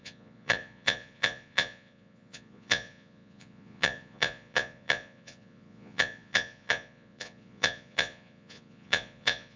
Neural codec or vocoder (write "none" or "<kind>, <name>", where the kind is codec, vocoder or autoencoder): vocoder, Vocos